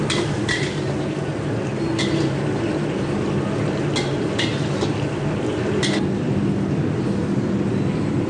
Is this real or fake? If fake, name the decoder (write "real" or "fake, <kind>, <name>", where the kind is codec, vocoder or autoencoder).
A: real